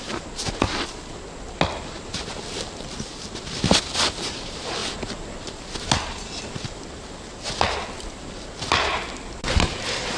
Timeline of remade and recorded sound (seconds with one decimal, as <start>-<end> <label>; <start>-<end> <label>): 0.0-10.2 recorded